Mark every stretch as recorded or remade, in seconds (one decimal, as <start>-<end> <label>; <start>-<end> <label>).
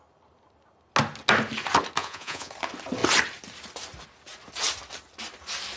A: 0.0-2.0 recorded; 2.0-2.5 remade; 2.5-5.8 recorded